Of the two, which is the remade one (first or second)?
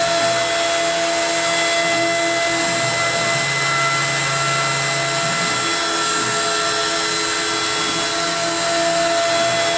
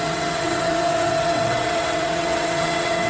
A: second